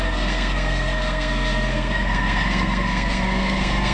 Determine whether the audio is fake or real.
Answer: fake